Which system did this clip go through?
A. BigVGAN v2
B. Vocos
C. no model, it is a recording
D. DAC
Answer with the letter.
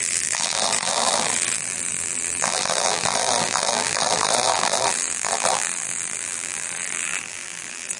A